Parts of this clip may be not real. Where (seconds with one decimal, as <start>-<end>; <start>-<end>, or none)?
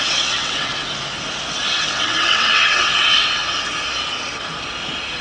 0.0-0.7; 1.9-3.4